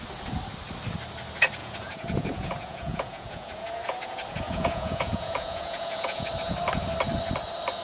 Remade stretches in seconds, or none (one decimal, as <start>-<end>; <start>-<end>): 1.6-6.3